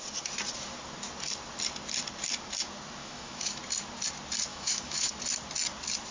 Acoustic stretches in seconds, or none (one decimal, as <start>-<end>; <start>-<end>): 0.0-3.0; 3.6-4.5; 5.1-6.1